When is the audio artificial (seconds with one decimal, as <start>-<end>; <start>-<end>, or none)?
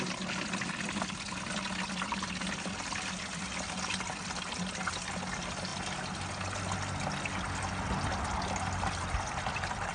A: none